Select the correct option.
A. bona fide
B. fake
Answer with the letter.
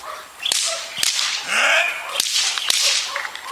A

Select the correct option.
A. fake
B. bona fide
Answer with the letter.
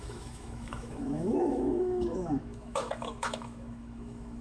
A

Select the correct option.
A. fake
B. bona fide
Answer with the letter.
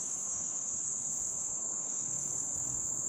A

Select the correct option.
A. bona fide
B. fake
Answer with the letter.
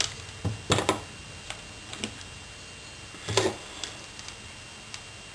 A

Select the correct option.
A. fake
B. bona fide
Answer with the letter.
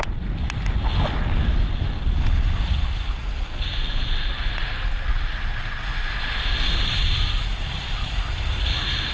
B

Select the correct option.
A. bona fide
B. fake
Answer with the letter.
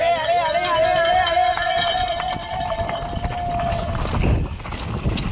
A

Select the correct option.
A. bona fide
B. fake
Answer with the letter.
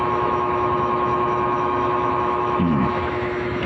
B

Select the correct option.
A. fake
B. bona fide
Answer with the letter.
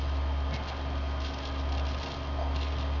B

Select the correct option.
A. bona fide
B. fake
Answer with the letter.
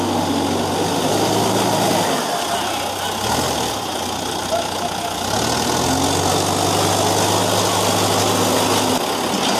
A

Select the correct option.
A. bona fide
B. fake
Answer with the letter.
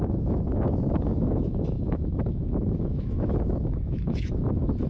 B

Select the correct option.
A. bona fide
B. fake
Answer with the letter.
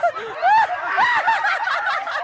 A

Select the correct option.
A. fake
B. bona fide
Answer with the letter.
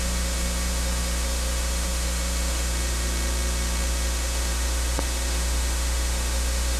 A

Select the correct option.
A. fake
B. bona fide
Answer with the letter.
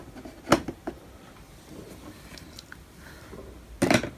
B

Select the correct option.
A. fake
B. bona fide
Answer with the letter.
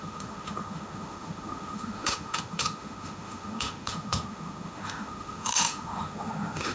A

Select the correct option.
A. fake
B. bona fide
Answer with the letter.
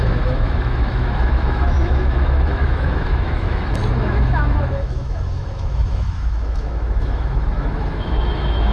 A